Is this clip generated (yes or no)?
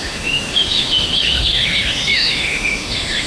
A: yes